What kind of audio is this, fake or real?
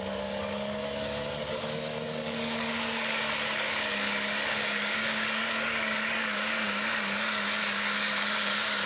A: fake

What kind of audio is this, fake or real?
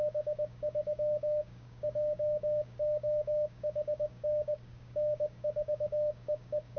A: fake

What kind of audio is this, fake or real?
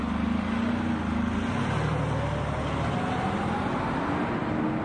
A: real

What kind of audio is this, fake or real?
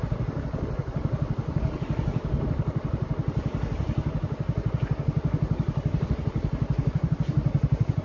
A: real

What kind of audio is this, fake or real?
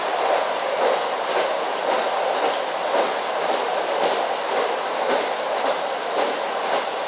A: real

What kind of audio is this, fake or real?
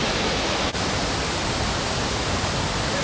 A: real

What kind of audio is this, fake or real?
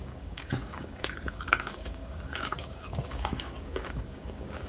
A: fake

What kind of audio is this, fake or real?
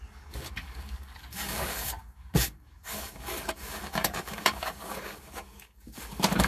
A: fake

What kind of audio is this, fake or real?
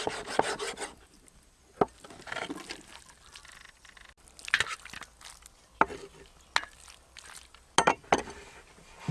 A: real